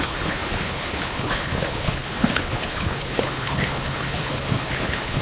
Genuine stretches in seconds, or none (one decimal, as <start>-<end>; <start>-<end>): none

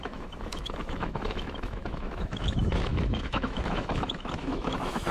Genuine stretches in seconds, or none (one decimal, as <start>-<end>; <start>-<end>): none

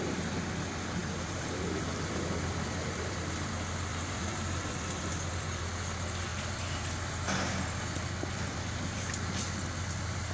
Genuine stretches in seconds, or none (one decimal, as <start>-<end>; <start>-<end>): 0.0-1.0; 3.5-3.9; 5.6-6.3; 9.3-10.3

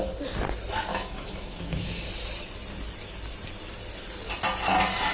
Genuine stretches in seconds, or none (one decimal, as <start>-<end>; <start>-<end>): 0.0-0.9; 2.1-5.1

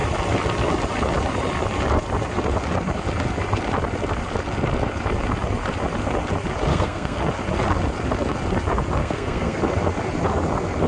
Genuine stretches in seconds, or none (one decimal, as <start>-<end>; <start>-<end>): 0.0-6.7; 7.2-9.0; 9.6-10.9

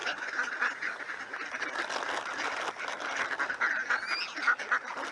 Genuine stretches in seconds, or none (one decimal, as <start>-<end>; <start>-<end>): 0.5-5.1